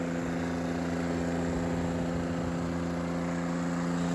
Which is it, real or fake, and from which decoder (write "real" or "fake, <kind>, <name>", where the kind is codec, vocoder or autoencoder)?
real